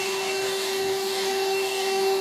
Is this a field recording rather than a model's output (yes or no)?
no